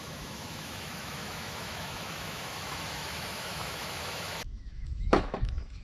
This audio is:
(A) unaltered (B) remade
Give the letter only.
B